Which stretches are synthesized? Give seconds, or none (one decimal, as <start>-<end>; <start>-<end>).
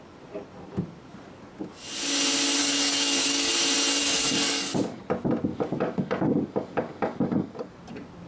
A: 2.6-3.5; 4.0-5.0; 5.5-7.8